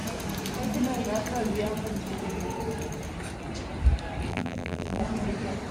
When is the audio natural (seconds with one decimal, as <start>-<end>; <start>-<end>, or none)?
0.0-4.3; 5.0-5.7

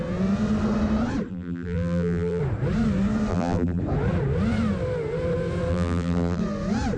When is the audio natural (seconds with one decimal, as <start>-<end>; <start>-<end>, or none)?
0.0-1.3; 2.4-3.3; 3.8-5.7; 6.4-7.0